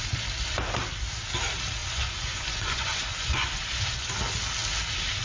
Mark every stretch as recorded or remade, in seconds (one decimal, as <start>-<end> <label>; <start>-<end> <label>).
0.0-1.8 recorded; 1.8-4.1 remade; 4.1-5.2 recorded